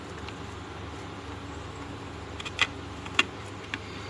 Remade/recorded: recorded